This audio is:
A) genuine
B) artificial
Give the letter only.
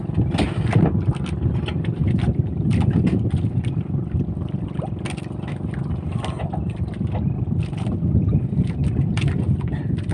A